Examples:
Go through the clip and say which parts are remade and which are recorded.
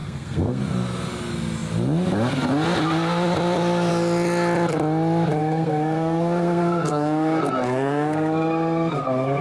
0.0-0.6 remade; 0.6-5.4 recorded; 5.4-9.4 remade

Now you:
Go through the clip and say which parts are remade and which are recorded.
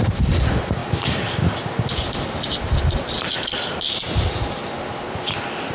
0.0-5.7 recorded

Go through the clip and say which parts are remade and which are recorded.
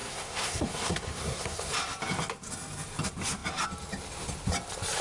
0.0-1.7 remade; 1.7-5.0 recorded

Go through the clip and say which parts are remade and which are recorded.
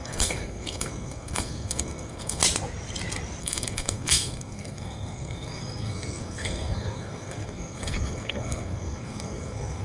0.0-2.4 remade; 2.4-3.4 recorded; 3.4-9.8 remade